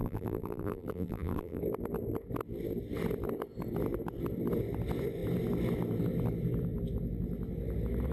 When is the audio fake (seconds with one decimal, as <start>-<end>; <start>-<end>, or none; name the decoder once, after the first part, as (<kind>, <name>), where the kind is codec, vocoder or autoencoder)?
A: 0.0-1.6 (vocoder, BigVGAN v2)